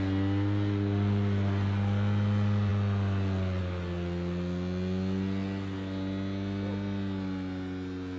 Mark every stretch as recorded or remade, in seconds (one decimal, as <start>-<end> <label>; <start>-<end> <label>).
0.0-8.2 recorded